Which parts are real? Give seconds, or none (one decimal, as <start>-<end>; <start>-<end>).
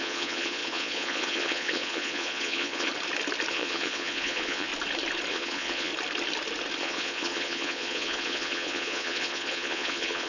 2.9-3.5; 4.7-5.3; 5.9-6.8